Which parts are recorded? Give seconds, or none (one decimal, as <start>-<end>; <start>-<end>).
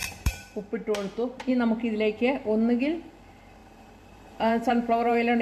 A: 1.5-3.6